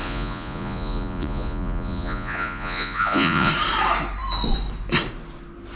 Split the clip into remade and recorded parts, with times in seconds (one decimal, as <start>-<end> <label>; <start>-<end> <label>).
0.0-3.5 remade; 3.5-5.8 recorded